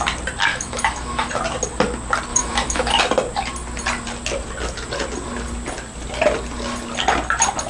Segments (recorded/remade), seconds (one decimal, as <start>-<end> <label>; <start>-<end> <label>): 0.0-0.5 recorded; 0.5-1.3 remade; 1.3-2.3 recorded; 2.3-3.0 remade; 3.0-7.7 recorded